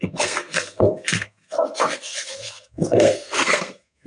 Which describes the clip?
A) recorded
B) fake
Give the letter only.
B